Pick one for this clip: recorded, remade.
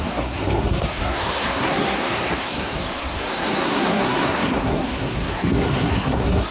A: remade